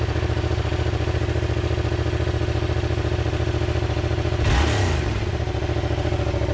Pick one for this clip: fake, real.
real